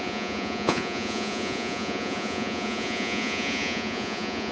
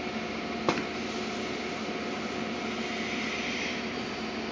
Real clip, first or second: second